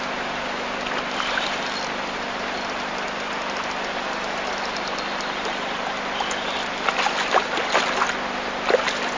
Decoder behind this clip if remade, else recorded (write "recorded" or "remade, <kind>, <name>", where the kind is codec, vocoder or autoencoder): recorded